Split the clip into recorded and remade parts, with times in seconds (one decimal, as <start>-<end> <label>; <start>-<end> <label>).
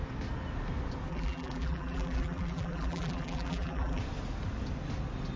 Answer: 0.0-1.1 recorded; 1.1-4.0 remade; 4.0-5.4 recorded